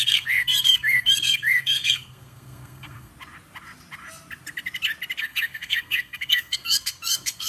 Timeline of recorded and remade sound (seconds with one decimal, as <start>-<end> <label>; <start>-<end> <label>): 0.0-3.1 remade; 3.1-5.2 recorded; 5.2-7.5 remade